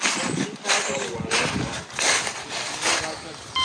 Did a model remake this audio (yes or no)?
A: no